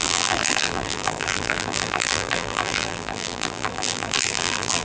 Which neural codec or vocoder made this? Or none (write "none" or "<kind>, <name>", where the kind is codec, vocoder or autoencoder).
vocoder, BigVGAN v2